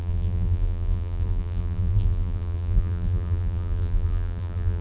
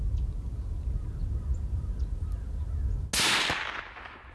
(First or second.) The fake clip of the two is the first